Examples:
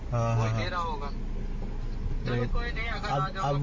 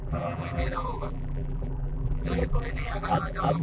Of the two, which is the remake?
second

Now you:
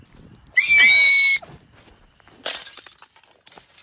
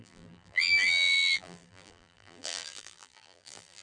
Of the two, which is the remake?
second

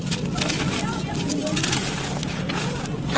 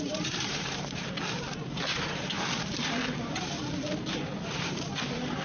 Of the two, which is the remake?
second